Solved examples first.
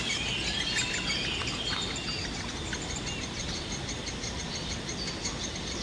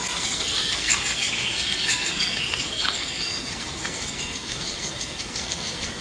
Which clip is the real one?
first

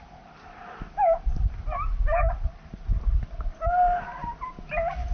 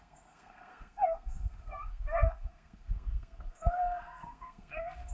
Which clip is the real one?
first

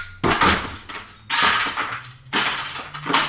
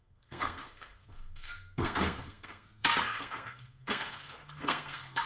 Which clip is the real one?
first